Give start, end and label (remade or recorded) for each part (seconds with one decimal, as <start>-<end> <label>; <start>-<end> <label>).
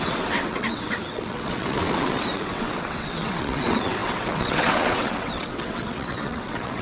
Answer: 0.0-6.8 remade